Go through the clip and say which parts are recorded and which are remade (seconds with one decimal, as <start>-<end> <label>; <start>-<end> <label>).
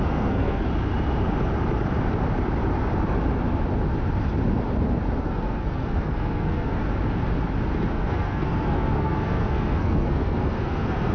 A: 0.0-0.7 remade; 0.7-5.2 recorded; 5.2-6.8 remade; 6.8-7.9 recorded; 7.9-11.1 remade